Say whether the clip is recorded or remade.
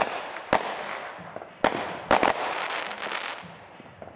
recorded